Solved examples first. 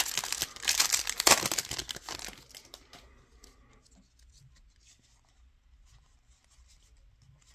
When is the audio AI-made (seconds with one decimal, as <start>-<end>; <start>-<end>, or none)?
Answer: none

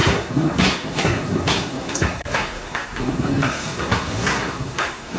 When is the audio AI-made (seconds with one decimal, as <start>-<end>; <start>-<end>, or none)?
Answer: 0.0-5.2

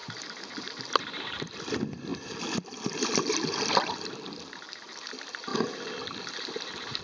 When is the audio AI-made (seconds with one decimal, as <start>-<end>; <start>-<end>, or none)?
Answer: none